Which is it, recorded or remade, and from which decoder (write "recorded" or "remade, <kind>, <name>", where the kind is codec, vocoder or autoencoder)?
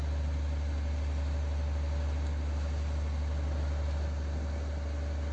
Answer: recorded